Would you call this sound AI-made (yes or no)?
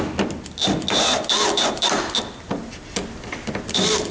no